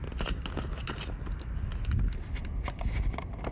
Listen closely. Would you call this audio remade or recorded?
recorded